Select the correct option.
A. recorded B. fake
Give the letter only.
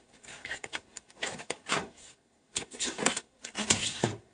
B